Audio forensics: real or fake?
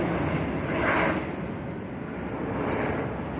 real